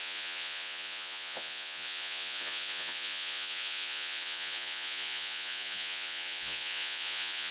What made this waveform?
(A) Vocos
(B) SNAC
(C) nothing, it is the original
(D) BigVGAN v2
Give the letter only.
A